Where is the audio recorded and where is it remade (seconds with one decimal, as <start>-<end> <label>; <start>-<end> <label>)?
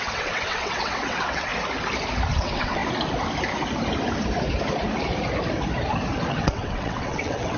0.0-1.5 remade; 1.5-2.3 recorded; 2.3-2.8 remade; 2.8-6.3 recorded; 6.3-7.6 remade